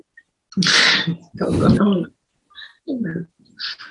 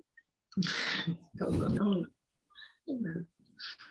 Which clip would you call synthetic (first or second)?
second